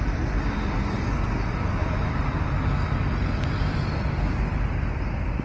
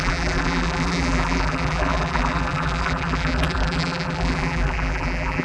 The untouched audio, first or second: first